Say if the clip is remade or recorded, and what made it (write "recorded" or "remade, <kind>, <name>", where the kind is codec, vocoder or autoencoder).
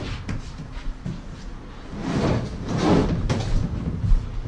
recorded